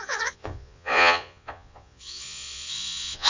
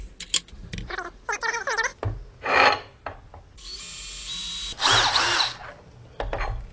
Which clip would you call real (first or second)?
second